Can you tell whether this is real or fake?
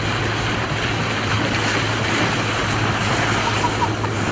real